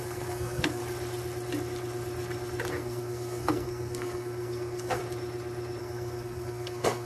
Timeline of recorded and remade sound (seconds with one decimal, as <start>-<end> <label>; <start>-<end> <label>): 0.0-0.8 remade; 0.8-2.7 recorded; 2.7-5.0 remade; 5.0-5.8 recorded; 5.8-7.1 remade